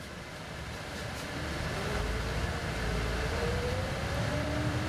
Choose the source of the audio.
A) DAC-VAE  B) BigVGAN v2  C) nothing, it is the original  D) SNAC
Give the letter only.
B